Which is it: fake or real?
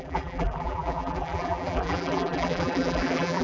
fake